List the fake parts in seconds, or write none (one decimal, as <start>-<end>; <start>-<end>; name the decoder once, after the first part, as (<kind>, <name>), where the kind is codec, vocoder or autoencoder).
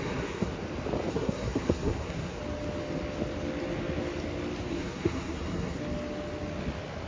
0.0-0.5 (codec, SNAC); 1.1-2.4; 4.7-5.8